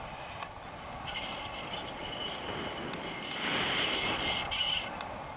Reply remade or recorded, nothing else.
recorded